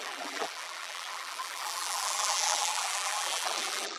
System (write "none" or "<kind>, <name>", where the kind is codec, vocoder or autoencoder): vocoder, BigVGAN v2